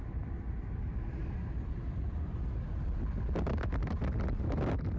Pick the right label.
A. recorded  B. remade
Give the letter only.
A